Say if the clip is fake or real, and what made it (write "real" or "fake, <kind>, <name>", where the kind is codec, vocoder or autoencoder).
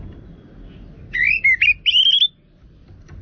real